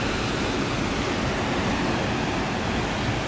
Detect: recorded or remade recorded